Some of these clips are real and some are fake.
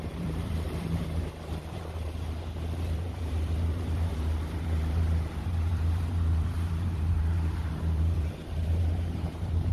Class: fake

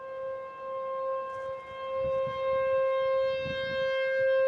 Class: real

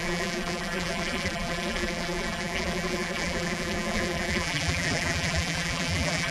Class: fake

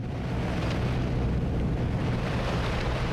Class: fake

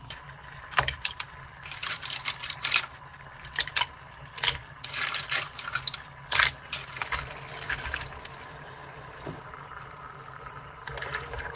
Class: fake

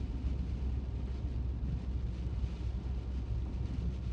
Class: real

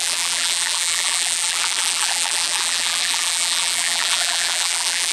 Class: fake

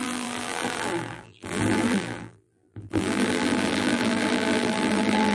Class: fake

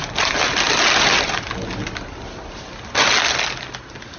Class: real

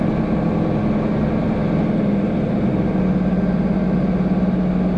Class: real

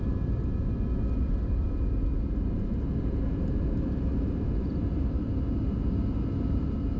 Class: fake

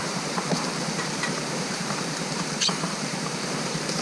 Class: fake